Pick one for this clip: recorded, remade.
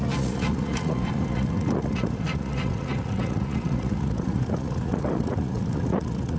remade